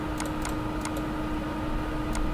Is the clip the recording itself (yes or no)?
yes